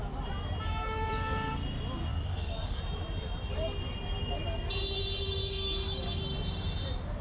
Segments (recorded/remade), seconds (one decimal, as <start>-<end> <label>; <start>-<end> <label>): 0.0-2.1 recorded; 2.1-2.8 remade; 2.8-5.4 recorded; 5.4-6.2 remade; 6.2-7.2 recorded